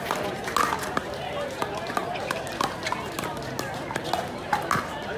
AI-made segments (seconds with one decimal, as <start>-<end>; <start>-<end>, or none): none